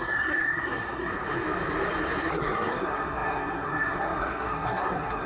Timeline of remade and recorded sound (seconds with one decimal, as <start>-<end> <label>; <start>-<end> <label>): 0.0-1.1 remade; 1.1-2.3 recorded; 2.3-5.3 remade